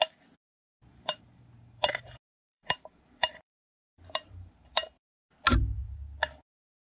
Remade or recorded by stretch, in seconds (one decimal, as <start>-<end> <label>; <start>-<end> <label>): 0.0-0.9 recorded; 0.9-5.1 remade; 5.1-7.0 recorded